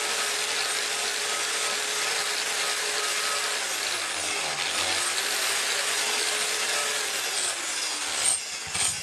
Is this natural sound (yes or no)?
yes